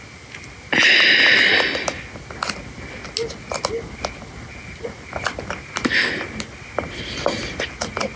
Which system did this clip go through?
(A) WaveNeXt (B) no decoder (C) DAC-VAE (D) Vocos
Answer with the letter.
B